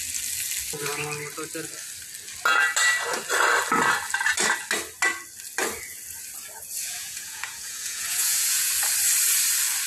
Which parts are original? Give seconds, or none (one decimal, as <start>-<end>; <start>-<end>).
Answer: 0.0-6.8; 8.7-9.9